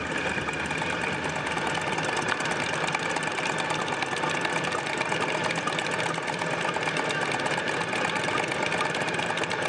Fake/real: real